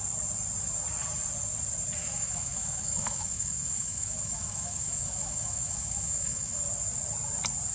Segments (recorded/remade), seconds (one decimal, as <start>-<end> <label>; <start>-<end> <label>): 0.0-2.0 recorded; 2.0-6.6 remade; 6.6-7.7 recorded